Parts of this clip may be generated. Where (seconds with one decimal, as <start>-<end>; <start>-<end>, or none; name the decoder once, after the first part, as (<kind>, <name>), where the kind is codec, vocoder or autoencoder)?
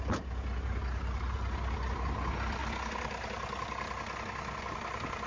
none